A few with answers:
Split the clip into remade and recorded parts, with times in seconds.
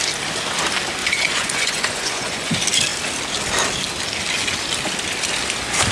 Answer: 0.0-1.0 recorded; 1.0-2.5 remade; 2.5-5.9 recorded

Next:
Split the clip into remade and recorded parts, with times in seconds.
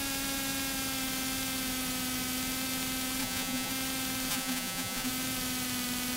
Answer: 0.0-3.2 recorded; 3.2-3.7 remade; 3.7-4.3 recorded; 4.3-5.1 remade; 5.1-6.2 recorded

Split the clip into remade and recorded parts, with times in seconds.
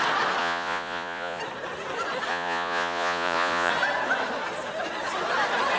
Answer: 0.0-0.4 recorded; 0.4-1.4 remade; 1.4-2.3 recorded; 2.3-3.7 remade; 3.7-5.8 recorded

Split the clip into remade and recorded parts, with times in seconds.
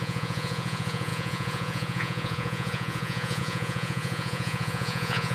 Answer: 0.0-5.3 remade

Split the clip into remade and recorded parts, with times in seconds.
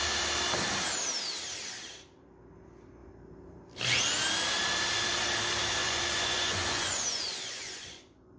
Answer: 0.0-5.8 recorded; 5.8-8.4 remade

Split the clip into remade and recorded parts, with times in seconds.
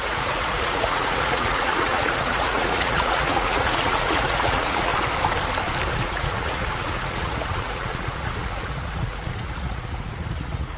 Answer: 0.0-4.9 remade; 4.9-5.9 recorded; 5.9-10.8 remade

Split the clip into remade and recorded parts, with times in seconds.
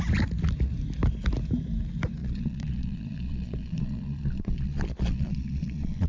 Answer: 0.0-2.2 recorded; 2.2-6.1 remade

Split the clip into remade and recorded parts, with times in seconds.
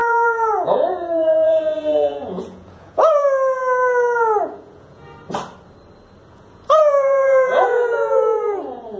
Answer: 0.0-3.2 remade; 3.2-4.4 recorded; 4.4-5.0 remade; 5.0-6.3 recorded; 6.3-9.0 remade